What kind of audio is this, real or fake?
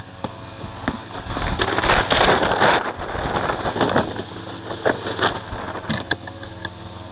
real